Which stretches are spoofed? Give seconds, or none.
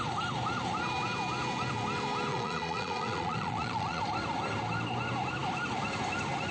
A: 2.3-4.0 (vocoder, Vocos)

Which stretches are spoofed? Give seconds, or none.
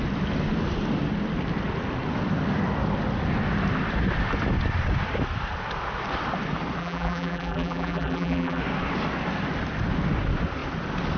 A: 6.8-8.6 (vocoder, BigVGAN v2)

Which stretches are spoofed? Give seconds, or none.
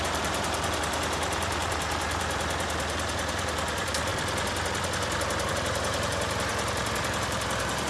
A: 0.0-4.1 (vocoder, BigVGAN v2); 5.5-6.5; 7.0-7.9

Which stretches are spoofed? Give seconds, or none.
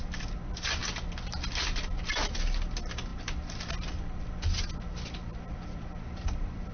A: 3.1-6.7 (vocoder, BigVGAN v2)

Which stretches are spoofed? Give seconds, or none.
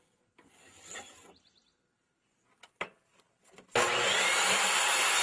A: none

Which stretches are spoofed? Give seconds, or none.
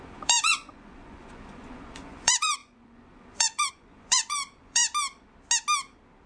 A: 0.0-4.8 (vocoder, Vocos)